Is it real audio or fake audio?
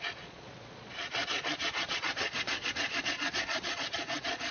fake